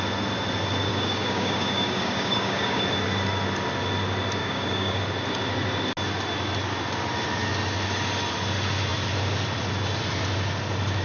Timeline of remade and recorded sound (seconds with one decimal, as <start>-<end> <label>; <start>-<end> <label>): 0.0-0.9 recorded; 0.9-2.8 remade; 2.8-4.4 recorded; 4.4-5.0 remade; 5.0-11.0 recorded